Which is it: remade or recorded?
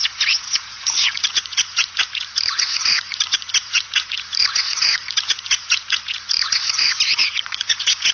remade